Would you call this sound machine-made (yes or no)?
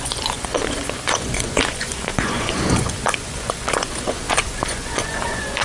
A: yes